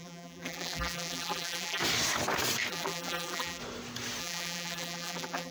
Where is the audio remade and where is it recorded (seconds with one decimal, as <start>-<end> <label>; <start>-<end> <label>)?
0.0-1.8 remade; 1.8-2.7 recorded; 2.7-3.6 remade; 3.6-4.2 recorded; 4.2-5.5 remade